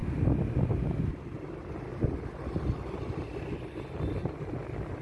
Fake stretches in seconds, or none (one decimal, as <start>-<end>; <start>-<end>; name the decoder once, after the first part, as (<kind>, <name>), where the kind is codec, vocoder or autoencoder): none